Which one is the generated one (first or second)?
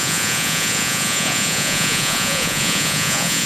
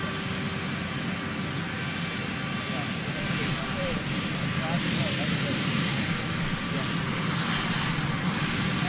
first